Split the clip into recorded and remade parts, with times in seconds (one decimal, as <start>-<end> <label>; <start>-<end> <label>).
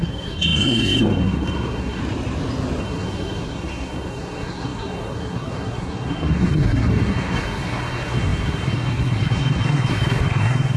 0.0-2.0 remade; 2.0-2.8 recorded; 2.8-10.8 remade